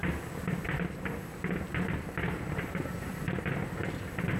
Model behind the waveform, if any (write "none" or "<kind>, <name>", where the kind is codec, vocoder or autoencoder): none